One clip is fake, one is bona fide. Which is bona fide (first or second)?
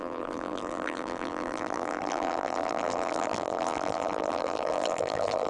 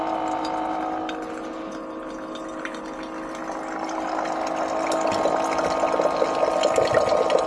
second